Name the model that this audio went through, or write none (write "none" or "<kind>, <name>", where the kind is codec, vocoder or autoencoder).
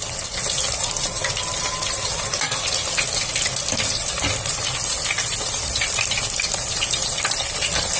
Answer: none